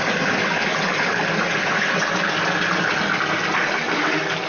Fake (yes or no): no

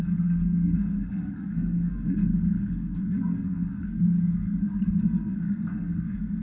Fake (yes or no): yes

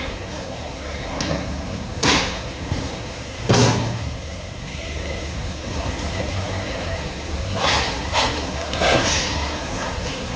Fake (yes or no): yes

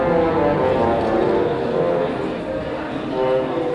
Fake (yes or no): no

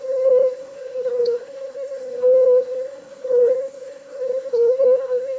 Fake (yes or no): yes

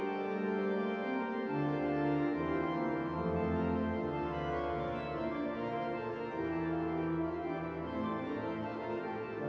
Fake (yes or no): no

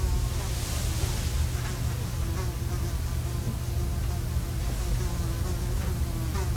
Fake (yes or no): no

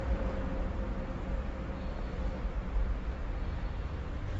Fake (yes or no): no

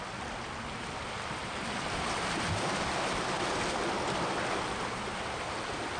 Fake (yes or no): no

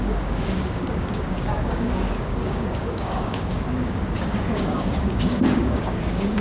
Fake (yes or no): yes